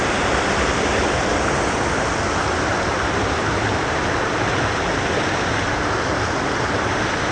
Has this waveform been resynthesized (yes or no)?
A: no